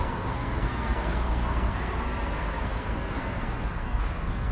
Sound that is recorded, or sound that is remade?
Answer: remade